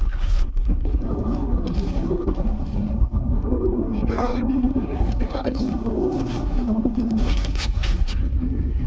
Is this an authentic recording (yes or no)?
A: no